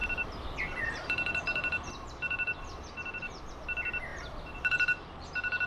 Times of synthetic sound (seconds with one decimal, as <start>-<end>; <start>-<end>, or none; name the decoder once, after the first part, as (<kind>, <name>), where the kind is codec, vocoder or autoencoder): 0.0-3.4 (vocoder, BigVGAN v2); 4.1-5.3